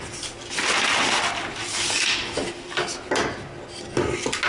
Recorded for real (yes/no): yes